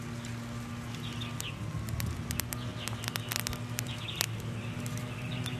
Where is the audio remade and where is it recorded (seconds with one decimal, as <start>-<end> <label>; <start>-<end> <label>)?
0.0-5.6 recorded